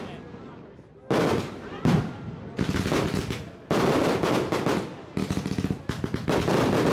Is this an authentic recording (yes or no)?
yes